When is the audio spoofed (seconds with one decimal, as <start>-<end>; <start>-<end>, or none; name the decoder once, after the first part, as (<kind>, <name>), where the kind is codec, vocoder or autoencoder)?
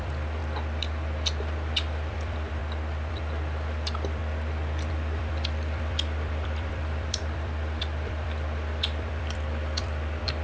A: 0.0-0.4 (vocoder, BigVGAN v2); 1.4-2.6; 3.1-4.2; 4.9-10.4